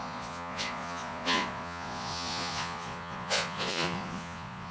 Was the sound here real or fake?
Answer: fake